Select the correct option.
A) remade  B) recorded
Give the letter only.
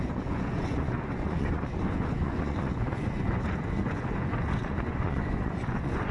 A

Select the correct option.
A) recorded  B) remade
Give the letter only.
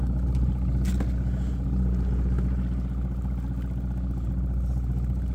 A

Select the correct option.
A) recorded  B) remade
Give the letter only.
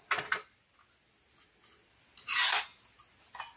A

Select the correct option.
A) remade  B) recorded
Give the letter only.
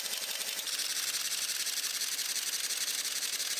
B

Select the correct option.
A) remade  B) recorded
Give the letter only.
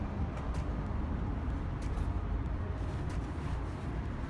B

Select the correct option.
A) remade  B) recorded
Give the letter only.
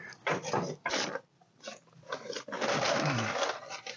B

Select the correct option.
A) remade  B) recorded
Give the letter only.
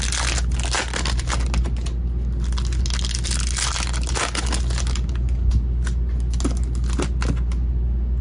B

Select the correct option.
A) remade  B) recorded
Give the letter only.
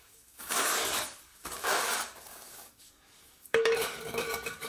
A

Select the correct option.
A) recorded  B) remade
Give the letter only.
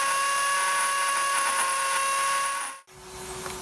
A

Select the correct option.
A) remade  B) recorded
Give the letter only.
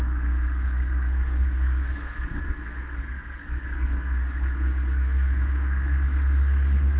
A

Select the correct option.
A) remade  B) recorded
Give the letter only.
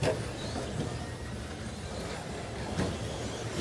B